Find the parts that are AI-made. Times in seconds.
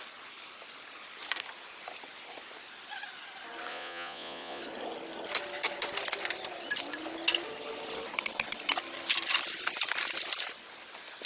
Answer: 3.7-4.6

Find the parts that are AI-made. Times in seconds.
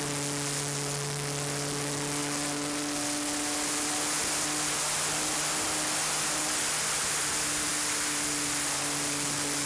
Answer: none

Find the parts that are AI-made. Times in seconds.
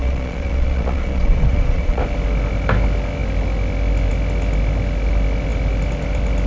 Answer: 0.0-2.0